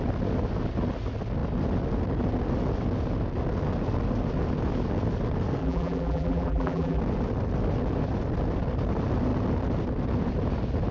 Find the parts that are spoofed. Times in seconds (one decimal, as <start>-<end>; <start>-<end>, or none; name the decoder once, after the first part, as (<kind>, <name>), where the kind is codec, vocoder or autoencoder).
5.6-7.0 (vocoder, BigVGAN v2)